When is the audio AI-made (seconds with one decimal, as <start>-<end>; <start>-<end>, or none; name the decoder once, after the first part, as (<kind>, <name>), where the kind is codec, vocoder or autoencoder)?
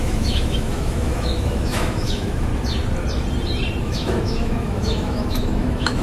0.0-2.5 (autoencoder, DAC-VAE); 3.8-6.0